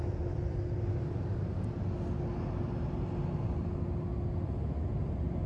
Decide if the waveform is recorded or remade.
recorded